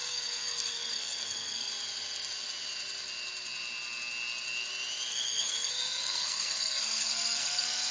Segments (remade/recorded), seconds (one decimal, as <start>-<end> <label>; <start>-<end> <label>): 0.0-1.7 remade; 1.7-5.1 recorded; 5.1-7.9 remade